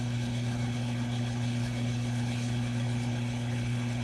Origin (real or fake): fake